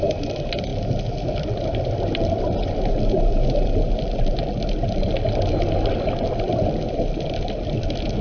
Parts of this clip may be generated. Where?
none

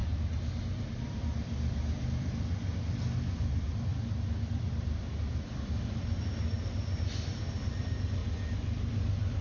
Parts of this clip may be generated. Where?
0.6-2.7 (vocoder, BigVGAN v2); 3.5-8.2; 8.9-9.4

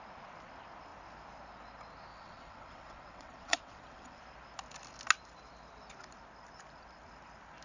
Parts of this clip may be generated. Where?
2.1-4.2 (vocoder, WaveNeXt)

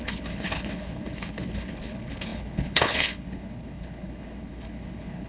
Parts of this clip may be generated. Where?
0.0-5.3 (codec, HILCodec)

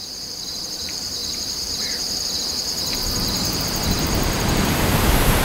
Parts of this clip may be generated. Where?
0.0-5.4 (vocoder, BigVGAN v2)